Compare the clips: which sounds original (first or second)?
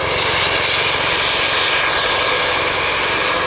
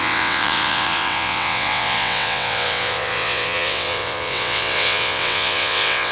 first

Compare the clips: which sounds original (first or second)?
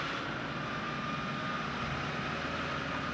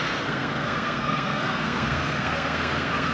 first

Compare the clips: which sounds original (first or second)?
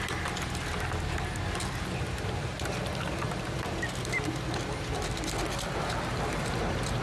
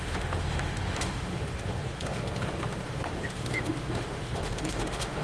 first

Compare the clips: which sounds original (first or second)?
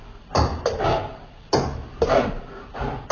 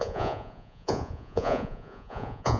first